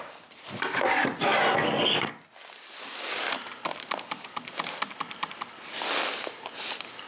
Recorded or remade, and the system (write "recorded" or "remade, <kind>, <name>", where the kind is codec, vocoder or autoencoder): recorded